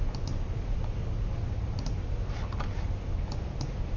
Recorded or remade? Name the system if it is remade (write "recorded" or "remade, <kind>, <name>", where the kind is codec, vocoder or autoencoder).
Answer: recorded